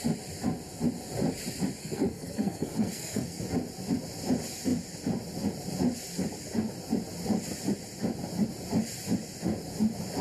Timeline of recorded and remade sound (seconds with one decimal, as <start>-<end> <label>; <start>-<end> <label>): 0.0-1.8 recorded; 1.8-3.4 remade; 3.4-10.2 recorded